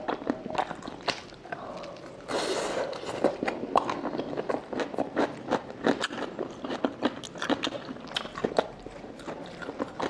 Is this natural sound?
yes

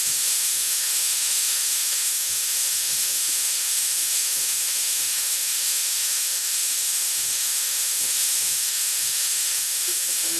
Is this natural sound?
no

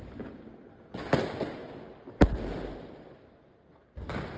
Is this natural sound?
yes